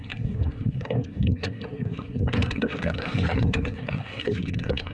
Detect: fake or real fake